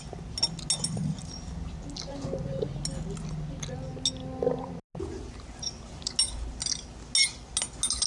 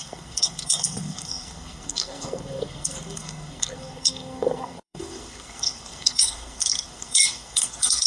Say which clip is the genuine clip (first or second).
first